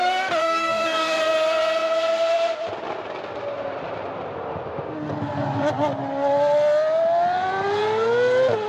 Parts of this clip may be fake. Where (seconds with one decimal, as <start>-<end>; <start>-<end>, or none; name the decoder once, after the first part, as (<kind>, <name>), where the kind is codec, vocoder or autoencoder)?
0.4-1.2 (codec, DAC)